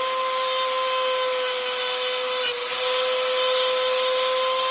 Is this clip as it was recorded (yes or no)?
yes